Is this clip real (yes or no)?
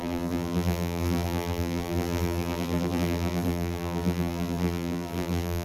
no